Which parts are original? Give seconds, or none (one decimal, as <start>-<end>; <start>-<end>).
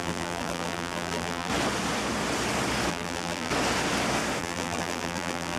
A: 1.5-2.9; 3.5-4.4